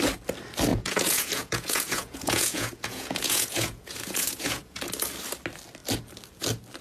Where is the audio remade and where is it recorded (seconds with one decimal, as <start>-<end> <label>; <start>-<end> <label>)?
0.0-0.7 recorded; 0.7-4.8 remade; 4.8-6.8 recorded